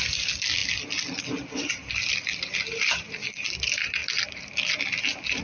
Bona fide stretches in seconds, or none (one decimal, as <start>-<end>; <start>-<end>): 0.0-5.4